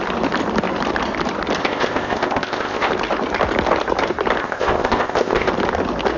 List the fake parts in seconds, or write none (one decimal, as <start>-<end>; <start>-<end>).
1.6-2.9; 4.4-5.5